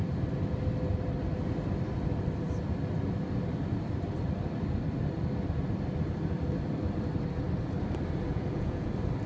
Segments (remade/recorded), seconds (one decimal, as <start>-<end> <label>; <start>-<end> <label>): 0.0-8.3 recorded; 8.3-8.9 remade; 8.9-9.3 recorded